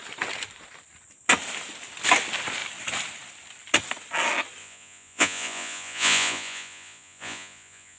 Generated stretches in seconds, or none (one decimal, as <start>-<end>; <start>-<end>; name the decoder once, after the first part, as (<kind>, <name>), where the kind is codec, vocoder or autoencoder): 4.6-8.0 (vocoder, Vocos)